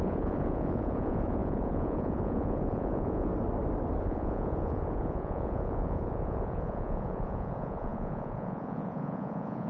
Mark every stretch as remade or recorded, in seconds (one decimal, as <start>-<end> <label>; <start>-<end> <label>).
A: 0.0-3.3 remade; 3.3-4.0 recorded; 4.0-9.7 remade